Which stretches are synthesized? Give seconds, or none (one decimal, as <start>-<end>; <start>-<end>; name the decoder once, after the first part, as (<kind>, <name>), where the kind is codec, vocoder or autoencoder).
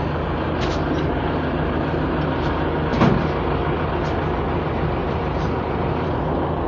0.8-1.3 (vocoder, BigVGAN v2); 5.0-6.2